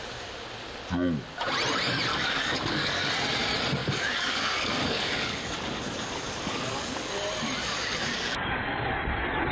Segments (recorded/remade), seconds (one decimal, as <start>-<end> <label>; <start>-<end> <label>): 0.0-2.1 recorded; 2.1-3.1 remade; 3.1-3.8 recorded; 3.8-7.1 remade; 7.1-7.6 recorded; 7.6-8.9 remade; 8.9-9.5 recorded